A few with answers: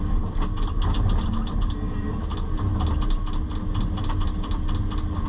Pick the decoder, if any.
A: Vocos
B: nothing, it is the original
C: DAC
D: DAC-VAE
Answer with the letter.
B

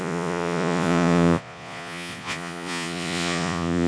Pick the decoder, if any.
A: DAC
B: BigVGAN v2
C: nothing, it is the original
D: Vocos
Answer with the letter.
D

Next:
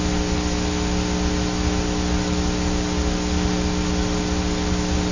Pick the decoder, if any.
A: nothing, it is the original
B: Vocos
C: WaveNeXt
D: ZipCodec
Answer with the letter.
A